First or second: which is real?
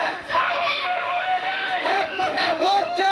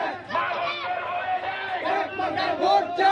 second